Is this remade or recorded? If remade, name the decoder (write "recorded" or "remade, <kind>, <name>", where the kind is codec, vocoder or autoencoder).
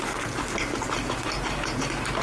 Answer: recorded